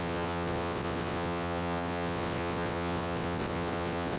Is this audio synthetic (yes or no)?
yes